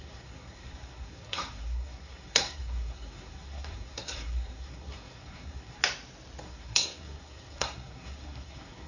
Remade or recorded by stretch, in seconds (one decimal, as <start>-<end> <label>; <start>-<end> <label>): 0.0-5.8 remade; 5.8-6.4 recorded; 6.4-8.9 remade